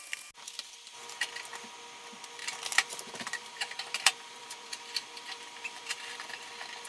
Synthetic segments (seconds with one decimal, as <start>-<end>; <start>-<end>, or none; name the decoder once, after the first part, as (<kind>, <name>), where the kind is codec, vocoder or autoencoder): 2.4-6.5 (vocoder, BigVGAN v2)